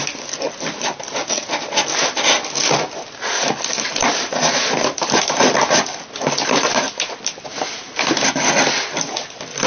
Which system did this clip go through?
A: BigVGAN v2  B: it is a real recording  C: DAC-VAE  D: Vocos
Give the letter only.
B